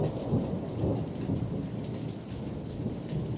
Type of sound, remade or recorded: recorded